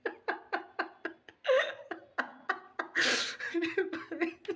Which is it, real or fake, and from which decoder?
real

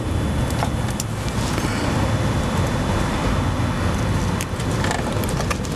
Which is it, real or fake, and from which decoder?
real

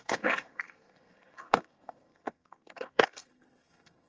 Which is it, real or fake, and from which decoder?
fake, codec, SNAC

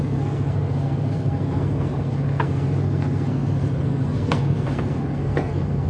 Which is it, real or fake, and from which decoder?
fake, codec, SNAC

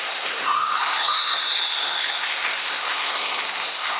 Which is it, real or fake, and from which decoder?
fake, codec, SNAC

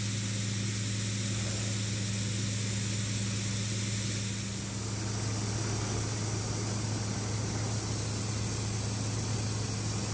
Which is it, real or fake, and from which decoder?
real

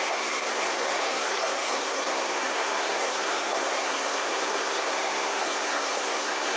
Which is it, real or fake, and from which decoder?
fake, codec, SNAC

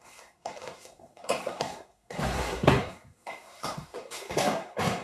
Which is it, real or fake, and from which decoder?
fake, codec, SNAC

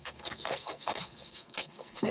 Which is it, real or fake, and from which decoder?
fake, codec, SNAC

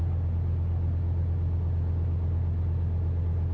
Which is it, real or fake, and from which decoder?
real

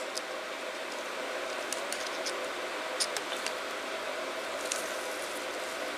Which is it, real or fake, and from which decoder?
real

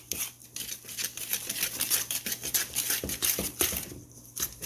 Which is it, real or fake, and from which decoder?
real